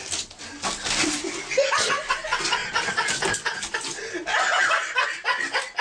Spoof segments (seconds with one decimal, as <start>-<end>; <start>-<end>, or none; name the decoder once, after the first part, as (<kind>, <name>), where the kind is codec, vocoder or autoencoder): none